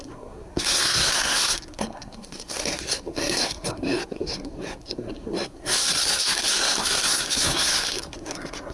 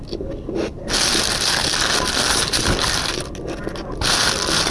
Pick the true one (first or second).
second